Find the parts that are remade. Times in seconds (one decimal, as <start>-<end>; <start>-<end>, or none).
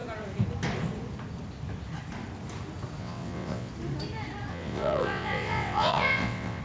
3.0-3.7; 4.5-6.6